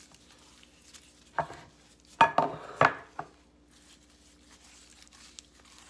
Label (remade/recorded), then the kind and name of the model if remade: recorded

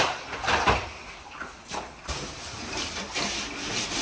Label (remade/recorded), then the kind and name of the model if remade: recorded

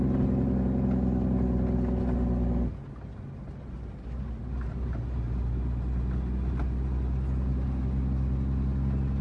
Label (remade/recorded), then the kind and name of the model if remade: recorded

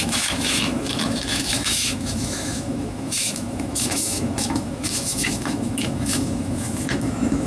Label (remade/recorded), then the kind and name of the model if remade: remade, autoencoder, DAC-VAE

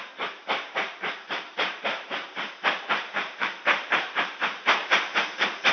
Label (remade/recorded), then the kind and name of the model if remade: remade, vocoder, BigVGAN v2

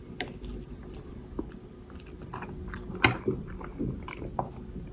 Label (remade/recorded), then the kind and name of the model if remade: recorded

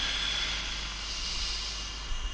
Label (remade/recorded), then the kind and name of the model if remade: recorded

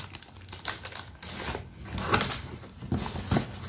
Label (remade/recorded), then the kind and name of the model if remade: recorded